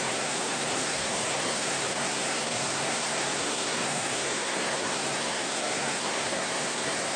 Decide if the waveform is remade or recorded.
remade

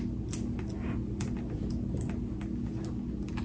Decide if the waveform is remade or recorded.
recorded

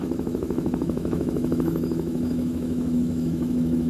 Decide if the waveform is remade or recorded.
remade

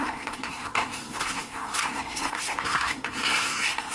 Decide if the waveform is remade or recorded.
remade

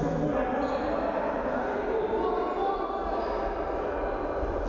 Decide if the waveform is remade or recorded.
recorded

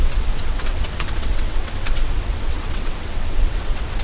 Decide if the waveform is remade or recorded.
remade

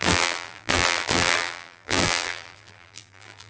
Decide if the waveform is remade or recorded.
remade